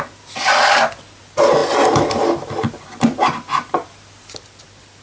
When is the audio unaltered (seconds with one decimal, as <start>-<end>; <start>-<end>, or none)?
0.0-5.0